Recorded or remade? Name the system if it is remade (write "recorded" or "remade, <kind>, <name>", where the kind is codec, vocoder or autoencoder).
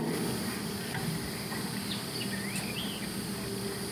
recorded